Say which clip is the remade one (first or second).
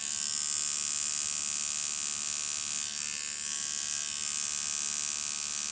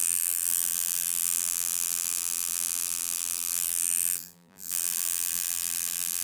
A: second